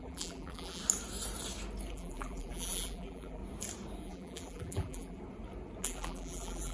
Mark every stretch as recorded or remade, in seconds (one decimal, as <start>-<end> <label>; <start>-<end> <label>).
0.0-0.8 remade; 0.8-1.9 recorded; 1.9-3.4 remade; 3.4-4.0 recorded; 4.0-5.2 remade; 5.2-5.8 recorded; 5.8-6.7 remade